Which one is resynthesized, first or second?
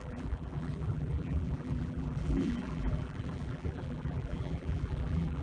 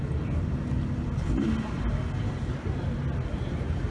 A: first